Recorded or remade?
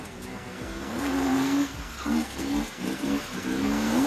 remade